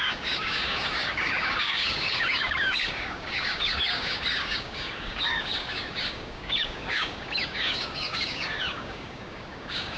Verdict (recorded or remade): remade